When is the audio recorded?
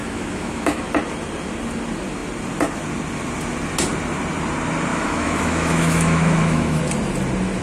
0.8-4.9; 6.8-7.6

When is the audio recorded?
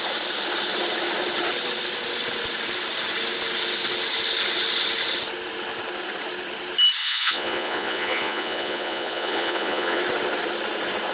0.0-7.0; 10.0-11.1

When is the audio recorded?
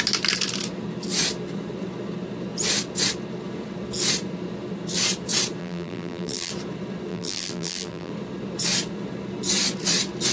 0.0-5.6; 6.5-7.1; 8.1-10.3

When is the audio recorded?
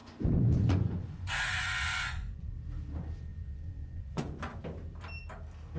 2.5-3.3; 4.6-5.8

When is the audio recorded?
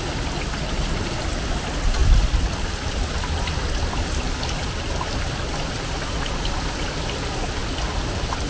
0.0-8.5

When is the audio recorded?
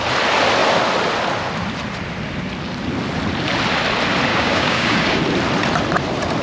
0.0-4.3; 5.2-6.4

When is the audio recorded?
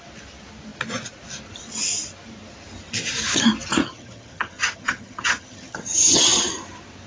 0.0-3.8; 6.5-7.1